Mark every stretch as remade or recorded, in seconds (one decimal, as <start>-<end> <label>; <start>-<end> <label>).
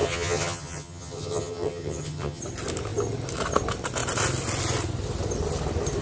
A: 0.0-2.4 remade; 2.4-6.0 recorded